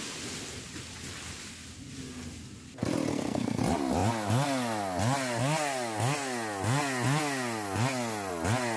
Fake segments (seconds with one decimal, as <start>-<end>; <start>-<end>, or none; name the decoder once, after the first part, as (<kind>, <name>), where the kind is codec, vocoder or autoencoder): 3.1-3.6 (codec, SNAC)